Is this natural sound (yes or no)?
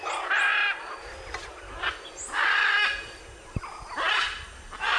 yes